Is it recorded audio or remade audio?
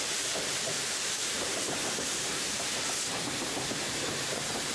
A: remade